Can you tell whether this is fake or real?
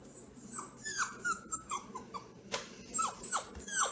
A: fake